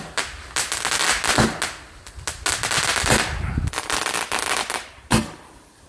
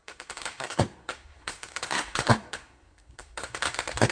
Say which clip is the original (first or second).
first